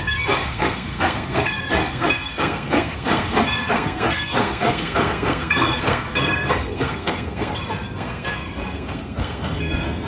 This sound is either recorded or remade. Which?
remade